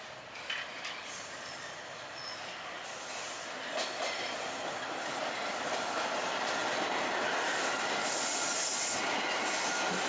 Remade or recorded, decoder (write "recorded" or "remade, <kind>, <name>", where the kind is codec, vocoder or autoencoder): recorded